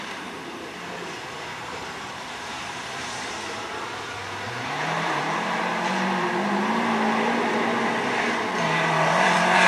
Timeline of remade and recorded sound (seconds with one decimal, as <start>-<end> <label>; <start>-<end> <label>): 0.0-5.7 remade; 5.7-9.1 recorded; 9.1-9.7 remade